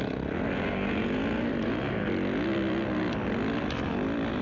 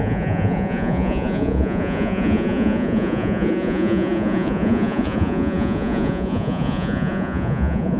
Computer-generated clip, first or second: second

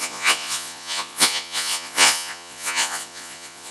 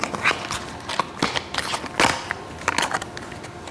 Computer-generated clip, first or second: first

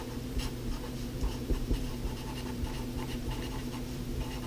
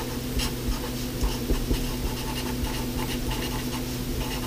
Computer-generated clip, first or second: first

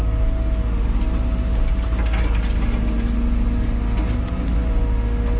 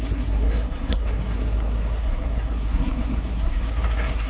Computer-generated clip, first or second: second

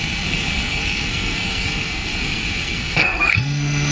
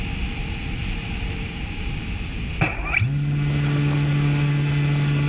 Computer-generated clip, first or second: first